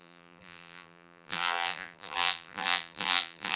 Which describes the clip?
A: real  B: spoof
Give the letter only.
B